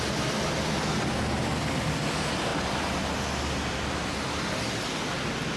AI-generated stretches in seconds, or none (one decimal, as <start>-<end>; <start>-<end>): none